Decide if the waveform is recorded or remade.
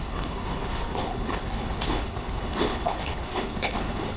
remade